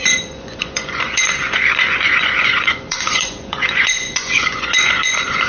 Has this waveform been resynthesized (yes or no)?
yes